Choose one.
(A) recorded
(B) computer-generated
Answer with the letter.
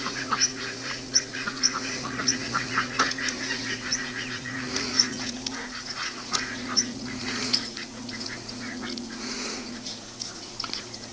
B